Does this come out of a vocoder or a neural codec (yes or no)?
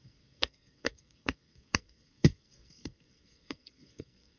yes